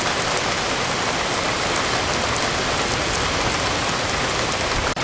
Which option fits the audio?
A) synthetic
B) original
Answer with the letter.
B